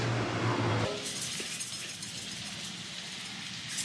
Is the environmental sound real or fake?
real